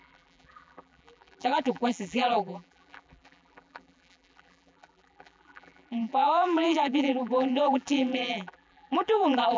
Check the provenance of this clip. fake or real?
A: fake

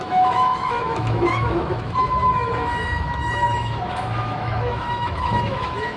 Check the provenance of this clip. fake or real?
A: fake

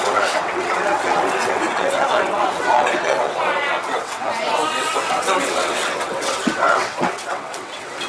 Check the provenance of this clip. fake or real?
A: fake